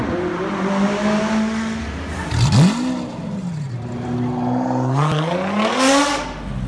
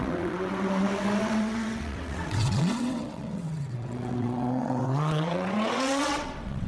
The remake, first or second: second